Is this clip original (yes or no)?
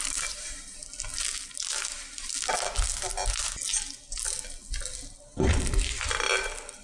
yes